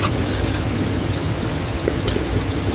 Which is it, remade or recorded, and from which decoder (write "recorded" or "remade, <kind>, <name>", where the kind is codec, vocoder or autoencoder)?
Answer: remade, vocoder, HiFi-GAN